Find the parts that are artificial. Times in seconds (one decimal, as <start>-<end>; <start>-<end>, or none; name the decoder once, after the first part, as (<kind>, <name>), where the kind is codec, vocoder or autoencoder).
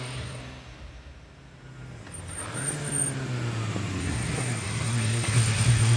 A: 0.0-0.4 (codec, SNAC); 4.0-6.0